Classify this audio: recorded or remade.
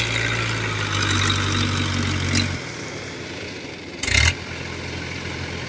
recorded